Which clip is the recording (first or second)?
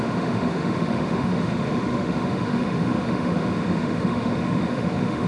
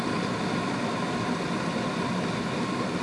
second